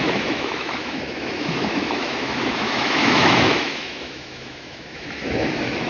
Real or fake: fake